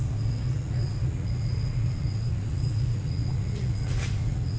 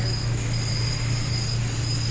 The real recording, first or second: second